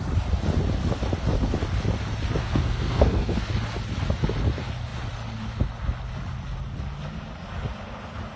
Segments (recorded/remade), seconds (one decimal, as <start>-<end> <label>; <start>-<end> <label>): 0.0-2.4 recorded; 2.4-3.5 remade; 3.5-8.4 recorded